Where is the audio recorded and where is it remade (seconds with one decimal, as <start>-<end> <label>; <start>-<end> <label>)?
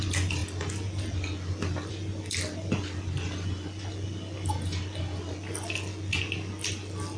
0.0-7.2 recorded